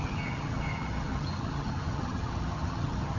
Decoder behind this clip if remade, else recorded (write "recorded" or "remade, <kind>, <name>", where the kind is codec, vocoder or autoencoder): remade, vocoder, HiFi-GAN